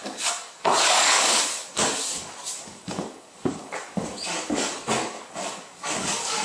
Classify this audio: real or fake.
fake